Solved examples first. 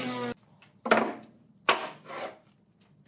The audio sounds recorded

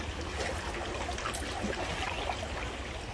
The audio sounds recorded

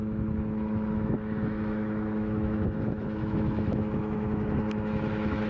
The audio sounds remade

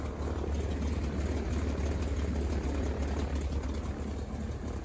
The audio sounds recorded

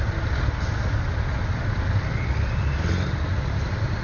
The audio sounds recorded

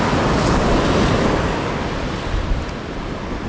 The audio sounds recorded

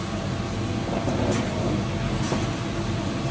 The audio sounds recorded